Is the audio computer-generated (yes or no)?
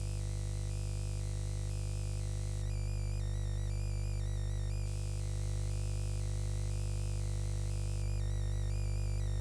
no